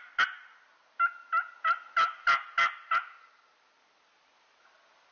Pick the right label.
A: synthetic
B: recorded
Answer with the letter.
B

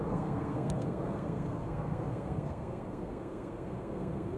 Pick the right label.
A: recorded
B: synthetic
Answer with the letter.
B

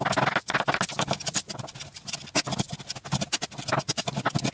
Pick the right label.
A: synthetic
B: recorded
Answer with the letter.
B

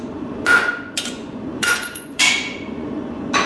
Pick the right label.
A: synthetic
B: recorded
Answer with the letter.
A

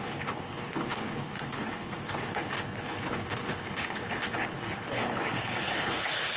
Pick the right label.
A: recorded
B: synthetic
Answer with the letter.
B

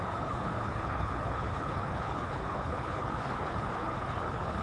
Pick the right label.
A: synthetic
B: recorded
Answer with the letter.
A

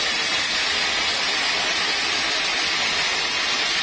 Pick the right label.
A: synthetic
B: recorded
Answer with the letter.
B